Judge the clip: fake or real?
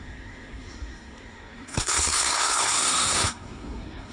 fake